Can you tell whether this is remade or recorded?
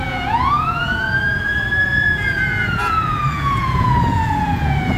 remade